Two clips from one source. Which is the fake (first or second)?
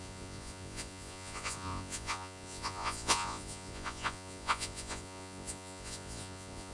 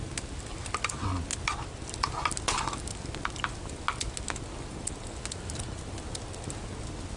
first